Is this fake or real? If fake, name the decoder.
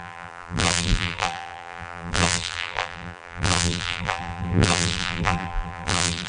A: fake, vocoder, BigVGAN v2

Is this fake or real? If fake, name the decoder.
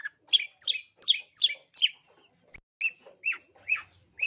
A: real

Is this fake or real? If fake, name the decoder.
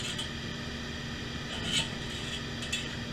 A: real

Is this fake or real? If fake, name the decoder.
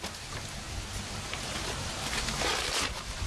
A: real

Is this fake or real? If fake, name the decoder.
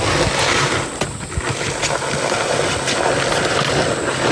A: real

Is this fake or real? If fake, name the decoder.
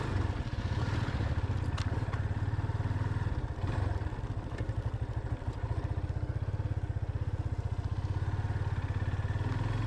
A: real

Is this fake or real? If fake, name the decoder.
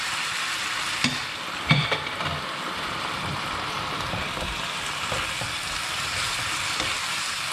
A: fake, vocoder, BigVGAN v2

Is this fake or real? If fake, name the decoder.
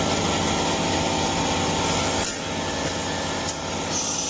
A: real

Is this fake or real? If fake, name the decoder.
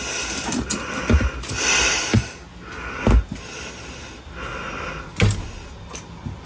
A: real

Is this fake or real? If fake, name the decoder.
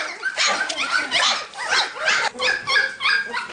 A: real